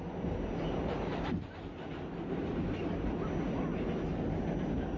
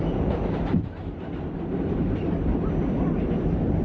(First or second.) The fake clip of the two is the second